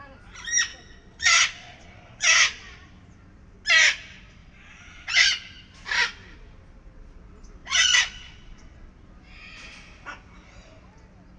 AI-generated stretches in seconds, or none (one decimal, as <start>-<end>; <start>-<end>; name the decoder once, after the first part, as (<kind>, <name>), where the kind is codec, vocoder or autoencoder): 0.7-2.9 (vocoder, Vocos); 4.4-5.3; 7.6-8.9